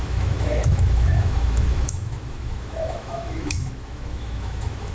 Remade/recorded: remade